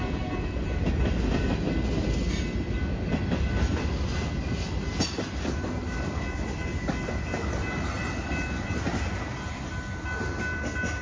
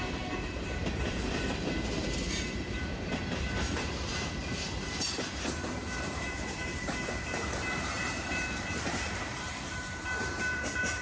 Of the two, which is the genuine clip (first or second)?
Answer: first